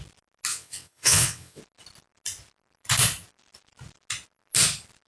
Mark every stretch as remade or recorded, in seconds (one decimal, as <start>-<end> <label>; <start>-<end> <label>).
0.0-0.5 recorded; 0.5-1.6 remade; 1.6-5.1 recorded